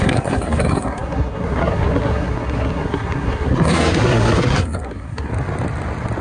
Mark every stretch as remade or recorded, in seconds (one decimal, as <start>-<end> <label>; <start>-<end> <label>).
0.0-5.3 remade; 5.3-6.2 recorded